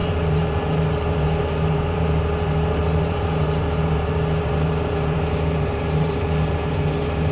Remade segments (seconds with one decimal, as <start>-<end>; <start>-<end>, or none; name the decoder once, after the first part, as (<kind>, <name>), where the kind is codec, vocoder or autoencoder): 0.0-7.3 (vocoder, BigVGAN v2)